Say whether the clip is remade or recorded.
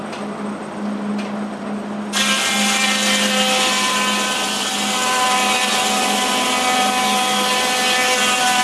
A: recorded